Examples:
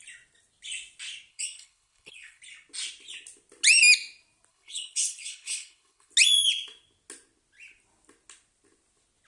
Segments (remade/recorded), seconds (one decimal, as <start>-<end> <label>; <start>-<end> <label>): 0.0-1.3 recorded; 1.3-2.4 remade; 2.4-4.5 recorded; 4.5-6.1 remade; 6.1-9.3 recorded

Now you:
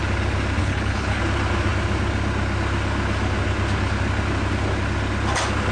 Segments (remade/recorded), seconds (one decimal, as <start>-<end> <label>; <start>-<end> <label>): 0.0-0.6 recorded; 0.6-1.2 remade; 1.2-5.7 recorded

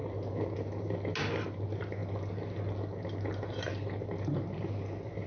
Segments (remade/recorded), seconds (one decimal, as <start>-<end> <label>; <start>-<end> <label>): 0.0-5.3 recorded